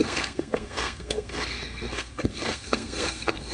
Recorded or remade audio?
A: remade